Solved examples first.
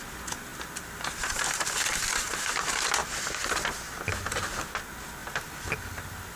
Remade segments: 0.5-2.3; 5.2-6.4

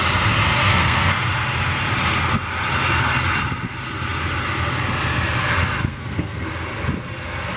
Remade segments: 0.6-1.1; 5.9-6.5

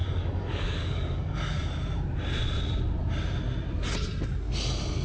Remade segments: 0.0-1.7

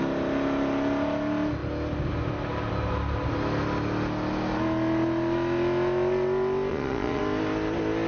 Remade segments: 6.7-7.2

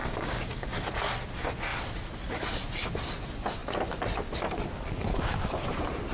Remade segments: 0.0-0.8

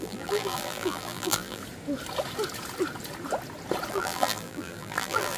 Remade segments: 0.0-1.6; 3.9-5.4